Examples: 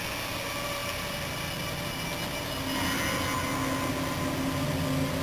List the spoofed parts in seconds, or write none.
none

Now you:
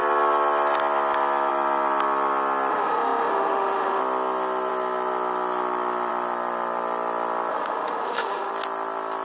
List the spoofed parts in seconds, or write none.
2.7-4.0; 7.5-8.5

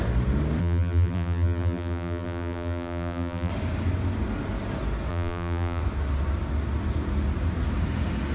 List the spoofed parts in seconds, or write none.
0.6-3.5; 5.1-5.8

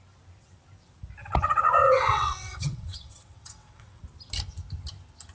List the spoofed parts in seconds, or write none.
1.2-4.0

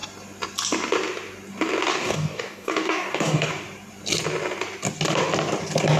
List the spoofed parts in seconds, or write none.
1.9-3.5

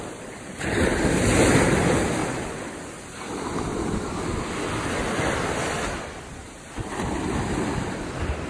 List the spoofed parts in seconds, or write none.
none

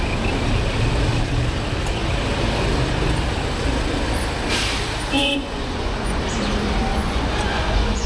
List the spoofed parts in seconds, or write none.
5.2-6.2; 6.9-8.1